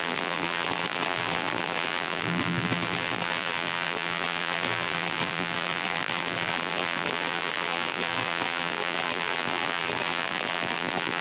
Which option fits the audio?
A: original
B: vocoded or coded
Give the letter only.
B